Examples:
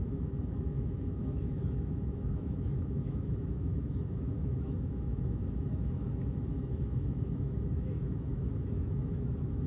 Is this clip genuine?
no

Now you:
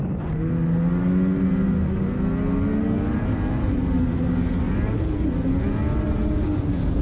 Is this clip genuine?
yes